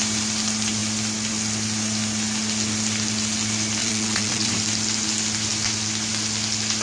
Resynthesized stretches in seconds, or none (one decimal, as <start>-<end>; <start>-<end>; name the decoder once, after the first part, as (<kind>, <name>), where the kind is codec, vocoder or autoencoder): 3.8-4.5 (vocoder, Vocos)